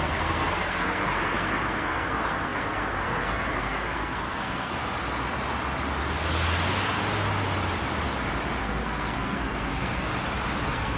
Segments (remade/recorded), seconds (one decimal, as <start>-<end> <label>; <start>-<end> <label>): 0.0-4.8 remade; 4.8-8.6 recorded; 8.6-10.1 remade; 10.1-10.6 recorded; 10.6-11.0 remade